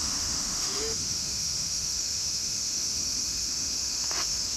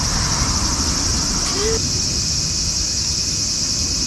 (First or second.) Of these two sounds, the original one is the second